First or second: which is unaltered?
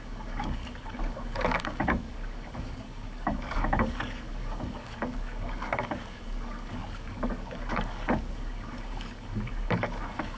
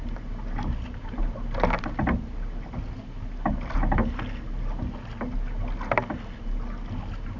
second